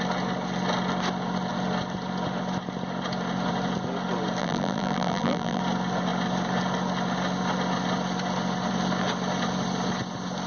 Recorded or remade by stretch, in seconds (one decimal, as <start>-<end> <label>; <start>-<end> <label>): 0.0-4.4 recorded; 4.4-5.6 remade; 5.6-10.5 recorded